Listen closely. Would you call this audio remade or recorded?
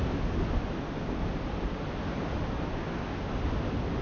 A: recorded